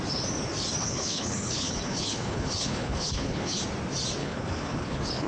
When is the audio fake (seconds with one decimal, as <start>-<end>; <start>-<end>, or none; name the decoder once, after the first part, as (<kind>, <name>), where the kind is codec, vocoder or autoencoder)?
0.8-3.6 (codec, HILCodec); 4.2-5.3